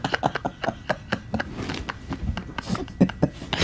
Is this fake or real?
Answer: real